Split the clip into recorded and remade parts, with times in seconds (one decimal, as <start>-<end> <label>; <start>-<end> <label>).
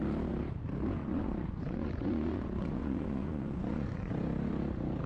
0.0-1.0 recorded; 1.0-4.1 remade; 4.1-5.1 recorded